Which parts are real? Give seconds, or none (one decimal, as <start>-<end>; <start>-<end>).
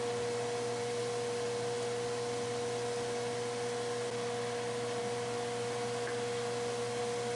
0.0-7.4